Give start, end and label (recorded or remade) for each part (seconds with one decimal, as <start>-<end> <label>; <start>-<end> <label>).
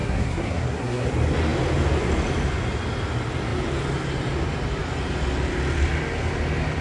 0.0-1.1 remade; 1.1-6.8 recorded